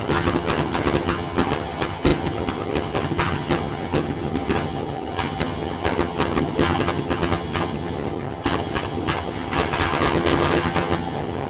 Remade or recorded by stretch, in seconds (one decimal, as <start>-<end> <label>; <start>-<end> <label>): 0.0-11.5 remade

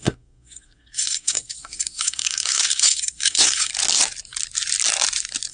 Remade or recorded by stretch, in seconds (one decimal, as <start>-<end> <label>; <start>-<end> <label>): 0.0-3.7 remade; 3.7-5.5 recorded

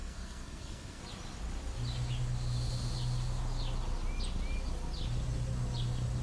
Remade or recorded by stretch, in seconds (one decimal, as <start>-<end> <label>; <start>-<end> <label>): 0.0-1.0 remade; 1.0-6.2 recorded

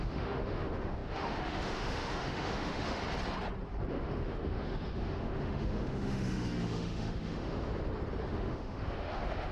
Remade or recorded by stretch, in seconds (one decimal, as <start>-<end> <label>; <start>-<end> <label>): 0.0-3.0 remade; 3.0-3.9 recorded; 3.9-7.7 remade; 7.7-8.2 recorded; 8.2-9.5 remade

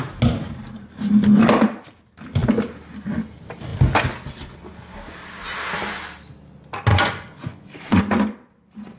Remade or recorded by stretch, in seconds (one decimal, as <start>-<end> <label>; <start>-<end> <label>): 0.0-6.9 recorded; 6.9-8.0 remade; 8.0-9.0 recorded

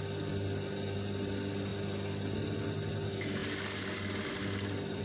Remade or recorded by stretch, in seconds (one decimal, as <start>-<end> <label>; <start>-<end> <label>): 0.0-5.0 recorded

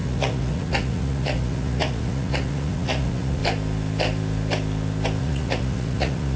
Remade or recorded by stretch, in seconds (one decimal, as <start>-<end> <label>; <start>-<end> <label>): 0.0-3.4 remade; 3.4-5.2 recorded; 5.2-6.4 remade